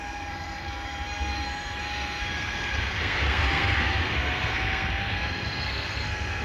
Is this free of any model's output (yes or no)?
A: no